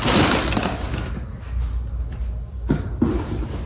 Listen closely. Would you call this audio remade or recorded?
recorded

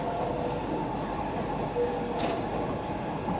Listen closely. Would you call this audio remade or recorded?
recorded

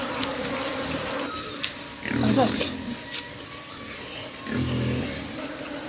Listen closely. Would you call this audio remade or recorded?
recorded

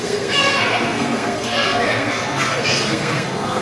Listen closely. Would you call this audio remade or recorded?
remade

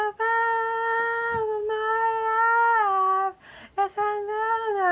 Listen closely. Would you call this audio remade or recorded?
recorded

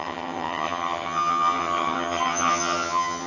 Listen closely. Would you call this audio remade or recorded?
remade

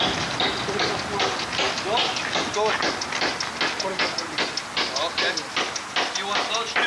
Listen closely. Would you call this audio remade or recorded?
recorded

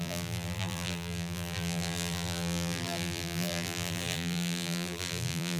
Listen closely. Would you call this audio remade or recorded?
remade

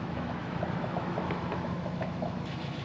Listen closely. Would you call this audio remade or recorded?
remade